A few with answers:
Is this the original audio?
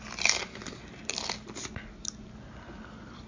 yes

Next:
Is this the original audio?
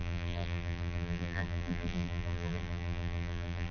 no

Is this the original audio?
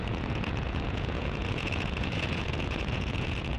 no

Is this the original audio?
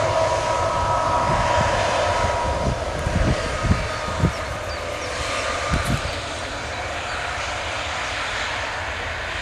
yes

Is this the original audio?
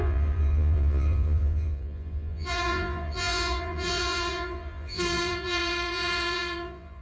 no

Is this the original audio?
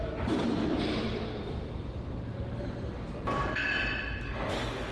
yes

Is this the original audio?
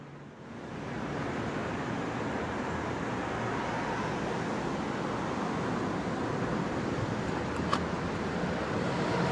yes